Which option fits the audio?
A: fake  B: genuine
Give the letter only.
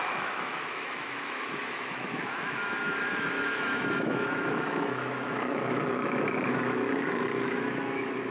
A